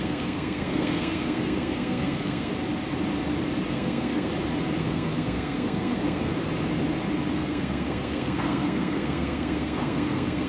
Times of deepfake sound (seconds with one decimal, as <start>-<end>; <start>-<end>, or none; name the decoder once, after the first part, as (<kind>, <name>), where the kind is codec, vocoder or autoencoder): 0.0-2.5 (codec, SNAC); 3.7-4.3; 4.8-6.3; 7.3-10.5